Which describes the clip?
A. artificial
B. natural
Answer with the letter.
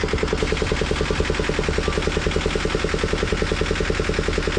B